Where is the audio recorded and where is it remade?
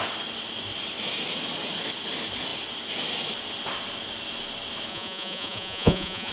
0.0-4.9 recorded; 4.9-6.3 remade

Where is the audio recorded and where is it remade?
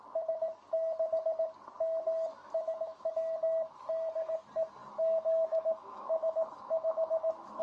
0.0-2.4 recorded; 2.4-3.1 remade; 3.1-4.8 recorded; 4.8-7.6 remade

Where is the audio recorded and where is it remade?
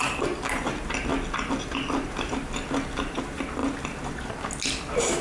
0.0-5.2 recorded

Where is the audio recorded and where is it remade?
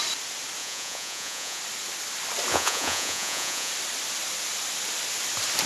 0.0-0.6 recorded; 0.6-1.6 remade; 1.6-2.5 recorded; 2.5-3.7 remade; 3.7-5.7 recorded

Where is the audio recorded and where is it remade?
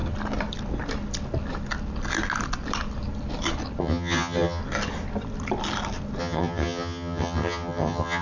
0.0-3.8 recorded; 3.8-4.6 remade; 4.6-6.2 recorded; 6.2-8.2 remade